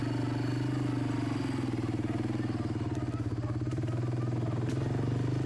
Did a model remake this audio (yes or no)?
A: no